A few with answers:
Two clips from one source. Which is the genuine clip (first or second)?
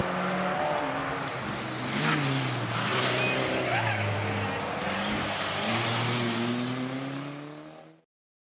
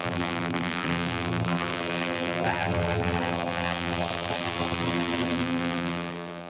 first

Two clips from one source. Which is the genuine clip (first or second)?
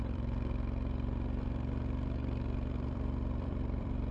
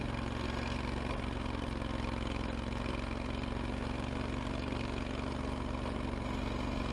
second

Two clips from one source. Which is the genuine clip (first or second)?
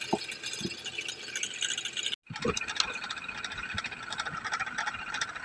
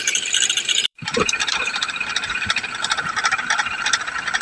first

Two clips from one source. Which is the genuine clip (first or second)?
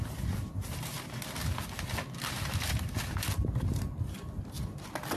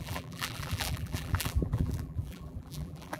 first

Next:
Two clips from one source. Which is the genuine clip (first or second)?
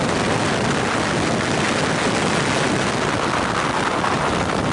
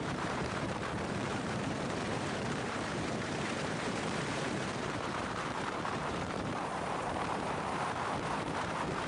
first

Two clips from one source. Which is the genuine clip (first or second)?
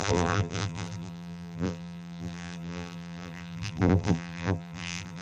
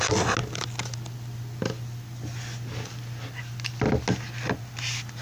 second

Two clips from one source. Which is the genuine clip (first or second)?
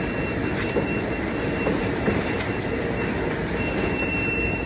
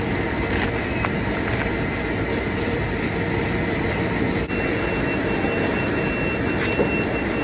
second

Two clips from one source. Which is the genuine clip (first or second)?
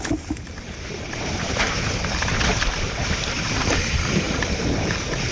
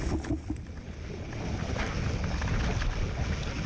second